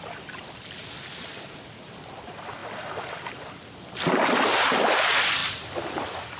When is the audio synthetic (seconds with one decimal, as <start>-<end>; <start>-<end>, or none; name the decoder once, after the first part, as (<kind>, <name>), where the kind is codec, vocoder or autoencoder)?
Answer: 2.6-3.4 (vocoder, BigVGAN v2); 5.4-6.4